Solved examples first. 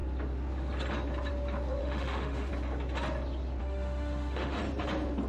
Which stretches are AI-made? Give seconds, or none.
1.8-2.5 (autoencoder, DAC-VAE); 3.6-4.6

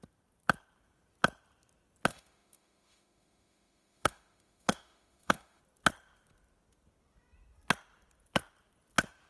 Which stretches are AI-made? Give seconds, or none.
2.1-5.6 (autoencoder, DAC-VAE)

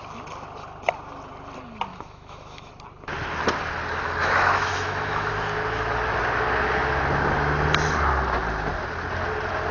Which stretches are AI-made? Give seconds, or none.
1.9-2.7 (autoencoder, DAC-VAE); 4.2-5.3

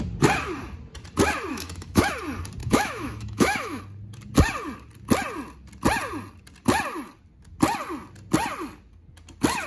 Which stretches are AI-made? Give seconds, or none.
1.5-2.1 (autoencoder, DAC-VAE); 2.6-3.8

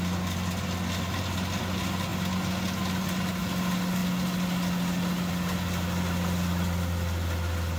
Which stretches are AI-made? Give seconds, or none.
none

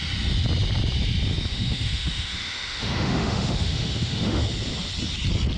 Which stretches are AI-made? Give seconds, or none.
1.5-4.4 (autoencoder, DAC-VAE)

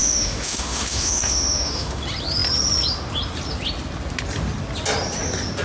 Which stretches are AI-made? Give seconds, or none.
0.0-2.0 (autoencoder, DAC-VAE)

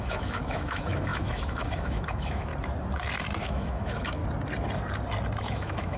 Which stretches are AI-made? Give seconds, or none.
0.0-2.5 (autoencoder, DAC-VAE); 3.4-4.2; 5.4-6.0